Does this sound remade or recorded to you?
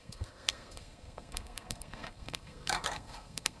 remade